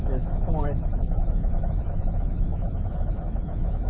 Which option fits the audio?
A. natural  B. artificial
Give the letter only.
B